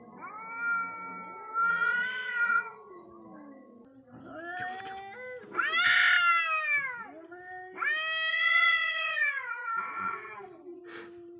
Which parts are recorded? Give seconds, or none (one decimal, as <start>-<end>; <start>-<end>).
0.0-1.7; 3.1-8.3; 10.8-11.4